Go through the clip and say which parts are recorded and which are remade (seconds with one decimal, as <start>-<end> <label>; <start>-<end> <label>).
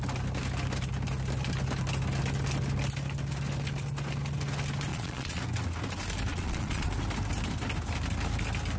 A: 0.0-4.9 recorded; 4.9-5.4 remade; 5.4-6.3 recorded; 6.3-6.9 remade; 6.9-8.8 recorded